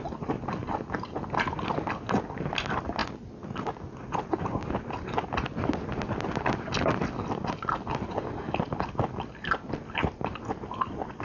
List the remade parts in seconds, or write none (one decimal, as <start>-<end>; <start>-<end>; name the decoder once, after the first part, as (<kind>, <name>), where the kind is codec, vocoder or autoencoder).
none